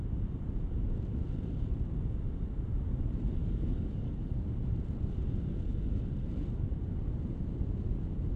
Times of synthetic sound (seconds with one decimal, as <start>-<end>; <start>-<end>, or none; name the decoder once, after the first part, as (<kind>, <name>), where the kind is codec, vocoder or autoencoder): 3.4-4.1 (codec, DAC)